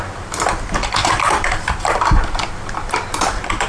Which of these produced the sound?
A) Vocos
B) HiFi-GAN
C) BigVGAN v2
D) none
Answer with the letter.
C